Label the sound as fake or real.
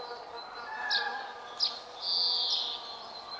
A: real